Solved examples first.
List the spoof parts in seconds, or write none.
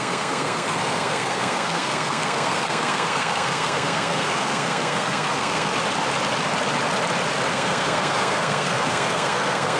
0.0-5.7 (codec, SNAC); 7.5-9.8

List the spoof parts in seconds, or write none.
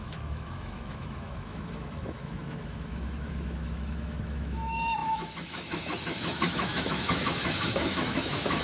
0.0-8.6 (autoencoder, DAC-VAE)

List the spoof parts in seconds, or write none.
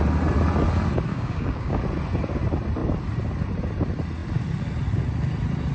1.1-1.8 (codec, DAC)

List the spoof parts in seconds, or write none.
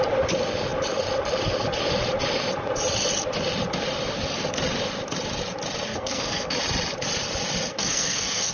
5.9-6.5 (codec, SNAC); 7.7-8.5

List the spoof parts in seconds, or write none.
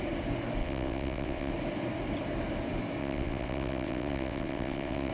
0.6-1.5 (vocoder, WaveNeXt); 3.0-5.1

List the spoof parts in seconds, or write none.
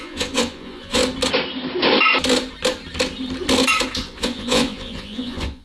0.0-1.0 (vocoder, Vocos); 4.0-5.6